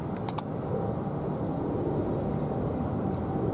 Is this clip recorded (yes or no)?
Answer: yes